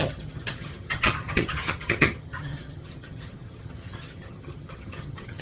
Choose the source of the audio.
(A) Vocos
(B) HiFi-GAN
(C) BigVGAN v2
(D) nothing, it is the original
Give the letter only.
B